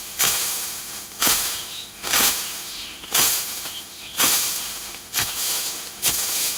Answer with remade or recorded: remade